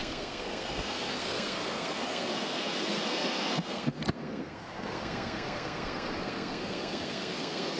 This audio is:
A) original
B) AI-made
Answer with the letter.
B